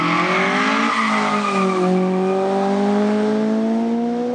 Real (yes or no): yes